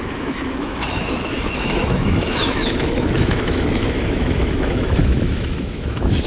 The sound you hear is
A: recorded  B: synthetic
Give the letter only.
B